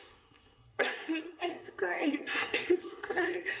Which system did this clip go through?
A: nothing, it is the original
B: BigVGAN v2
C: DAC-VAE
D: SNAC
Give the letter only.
D